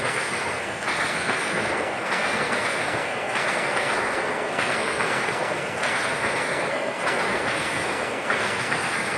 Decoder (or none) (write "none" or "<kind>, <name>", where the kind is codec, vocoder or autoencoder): codec, SNAC